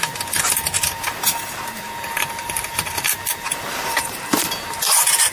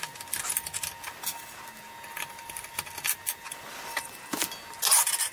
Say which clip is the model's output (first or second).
first